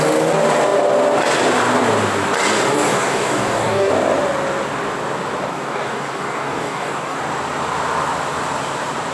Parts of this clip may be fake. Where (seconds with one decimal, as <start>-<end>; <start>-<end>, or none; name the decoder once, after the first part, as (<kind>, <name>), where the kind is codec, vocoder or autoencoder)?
2.9-3.9 (codec, DAC); 5.5-7.2